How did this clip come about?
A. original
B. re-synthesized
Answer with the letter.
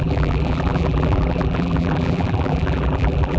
B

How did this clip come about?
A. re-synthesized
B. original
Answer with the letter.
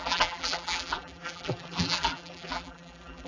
A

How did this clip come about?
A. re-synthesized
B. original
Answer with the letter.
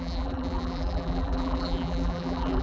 A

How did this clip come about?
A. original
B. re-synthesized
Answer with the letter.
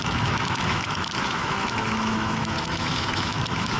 B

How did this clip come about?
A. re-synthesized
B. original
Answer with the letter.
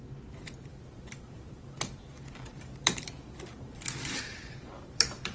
A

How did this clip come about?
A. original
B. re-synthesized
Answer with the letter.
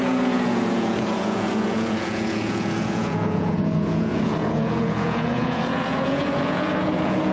B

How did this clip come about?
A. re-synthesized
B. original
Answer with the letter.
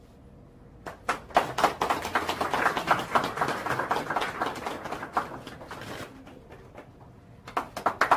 B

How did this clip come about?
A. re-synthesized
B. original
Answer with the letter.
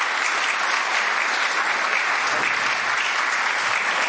B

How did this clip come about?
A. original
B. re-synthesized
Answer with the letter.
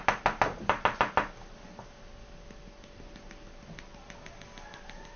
A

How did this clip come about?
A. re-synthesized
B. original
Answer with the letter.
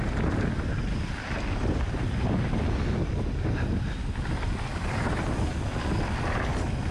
B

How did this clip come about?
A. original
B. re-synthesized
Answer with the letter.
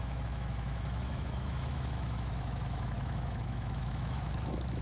B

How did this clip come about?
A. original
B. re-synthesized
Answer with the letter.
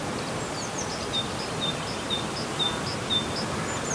A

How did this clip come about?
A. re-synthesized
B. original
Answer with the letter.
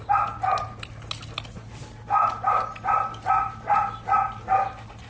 B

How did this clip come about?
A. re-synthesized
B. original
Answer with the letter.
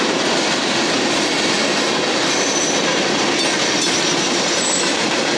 B